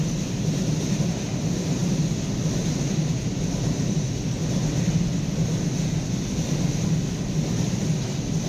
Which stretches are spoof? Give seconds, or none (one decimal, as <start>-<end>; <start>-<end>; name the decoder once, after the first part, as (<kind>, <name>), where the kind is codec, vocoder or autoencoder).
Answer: none